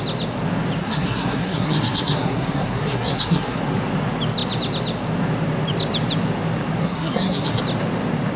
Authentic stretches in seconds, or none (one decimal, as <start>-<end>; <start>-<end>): 0.0-0.8; 3.6-6.8; 7.6-8.4